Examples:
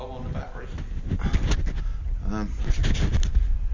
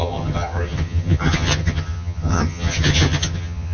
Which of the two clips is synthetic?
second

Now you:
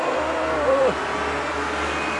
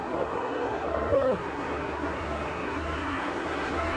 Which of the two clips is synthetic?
second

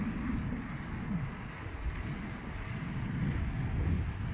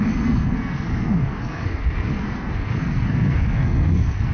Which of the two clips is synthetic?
second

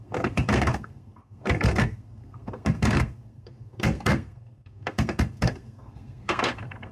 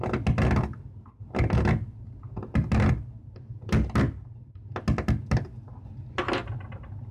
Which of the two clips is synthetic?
first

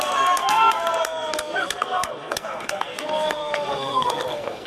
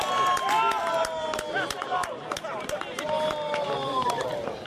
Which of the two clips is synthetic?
first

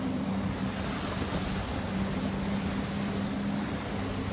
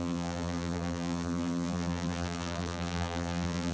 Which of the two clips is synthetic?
second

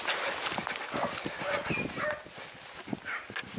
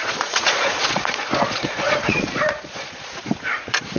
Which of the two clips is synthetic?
second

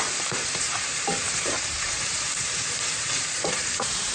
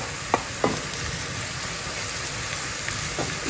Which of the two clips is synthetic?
first